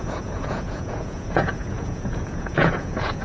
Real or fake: fake